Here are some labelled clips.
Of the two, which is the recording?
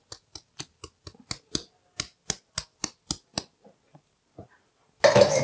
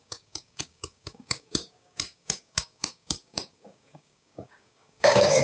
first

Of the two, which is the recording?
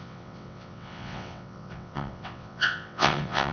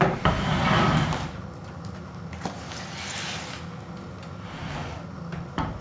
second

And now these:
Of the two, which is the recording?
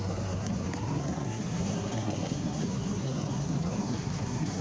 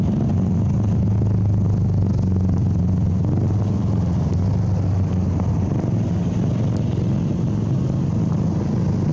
second